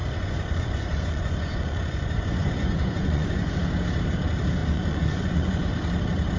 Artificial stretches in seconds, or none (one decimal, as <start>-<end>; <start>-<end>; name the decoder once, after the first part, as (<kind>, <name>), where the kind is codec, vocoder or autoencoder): 0.0-3.5 (vocoder, Vocos); 4.6-5.7